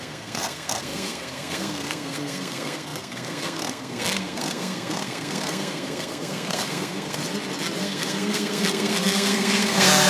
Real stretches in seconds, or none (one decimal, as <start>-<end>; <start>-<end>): 7.2-7.8